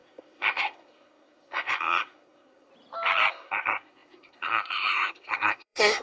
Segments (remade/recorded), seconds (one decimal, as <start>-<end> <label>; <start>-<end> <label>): 0.0-2.7 remade; 2.7-3.3 recorded; 3.3-6.0 remade